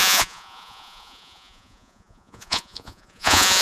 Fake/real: fake